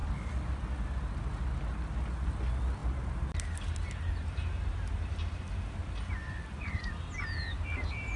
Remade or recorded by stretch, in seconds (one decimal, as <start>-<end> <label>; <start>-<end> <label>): 0.0-8.2 recorded